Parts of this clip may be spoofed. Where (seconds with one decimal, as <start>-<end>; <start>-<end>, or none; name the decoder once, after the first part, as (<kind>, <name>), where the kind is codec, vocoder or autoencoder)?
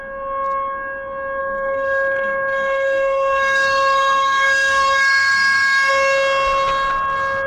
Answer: 1.4-5.9 (codec, SNAC)